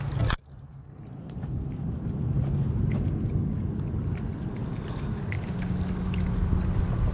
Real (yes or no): yes